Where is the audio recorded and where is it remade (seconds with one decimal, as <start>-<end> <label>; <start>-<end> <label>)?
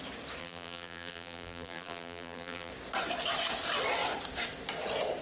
0.0-0.4 recorded; 0.4-2.7 remade; 2.7-5.2 recorded